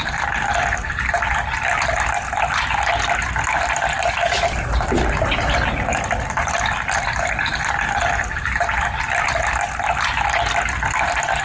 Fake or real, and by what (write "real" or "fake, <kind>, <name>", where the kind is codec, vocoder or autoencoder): real